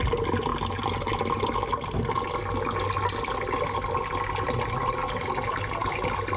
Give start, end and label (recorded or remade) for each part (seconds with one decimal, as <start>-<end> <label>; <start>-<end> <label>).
0.0-6.4 recorded